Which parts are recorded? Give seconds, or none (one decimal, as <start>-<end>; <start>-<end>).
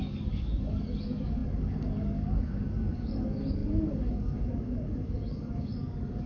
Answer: none